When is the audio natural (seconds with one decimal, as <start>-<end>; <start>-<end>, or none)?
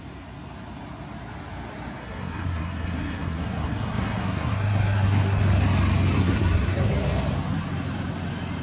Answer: 0.0-2.0; 5.4-6.2; 6.9-8.6